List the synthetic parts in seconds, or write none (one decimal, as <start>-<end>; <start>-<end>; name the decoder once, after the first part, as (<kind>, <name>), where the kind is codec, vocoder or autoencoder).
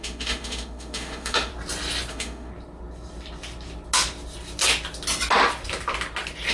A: 0.0-1.5 (autoencoder, DAC-VAE); 2.1-2.5